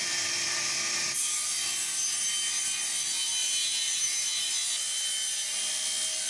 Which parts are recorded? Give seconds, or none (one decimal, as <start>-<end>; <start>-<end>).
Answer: 0.0-3.4; 4.5-6.3